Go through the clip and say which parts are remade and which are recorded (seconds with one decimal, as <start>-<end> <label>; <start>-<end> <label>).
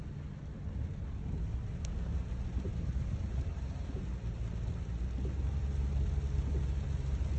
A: 0.0-2.7 recorded; 2.7-4.0 remade; 4.0-7.4 recorded